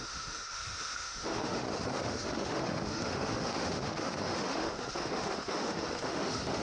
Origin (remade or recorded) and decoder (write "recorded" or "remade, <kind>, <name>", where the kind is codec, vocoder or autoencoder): remade, autoencoder, DAC-VAE